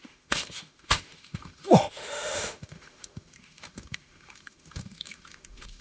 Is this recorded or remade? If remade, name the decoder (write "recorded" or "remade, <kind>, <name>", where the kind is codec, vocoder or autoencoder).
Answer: remade, autoencoder, DAC-VAE